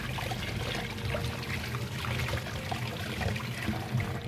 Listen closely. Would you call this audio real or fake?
real